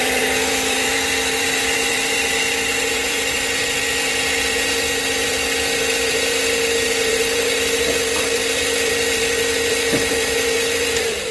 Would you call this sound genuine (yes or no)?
no